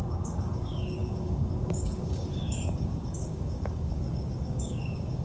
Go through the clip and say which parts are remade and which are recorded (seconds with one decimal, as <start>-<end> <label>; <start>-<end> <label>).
0.0-5.2 remade